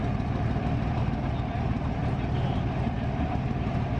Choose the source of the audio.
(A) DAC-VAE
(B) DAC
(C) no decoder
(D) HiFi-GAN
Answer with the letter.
C